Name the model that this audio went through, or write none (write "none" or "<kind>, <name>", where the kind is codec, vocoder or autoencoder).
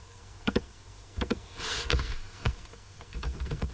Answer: codec, SNAC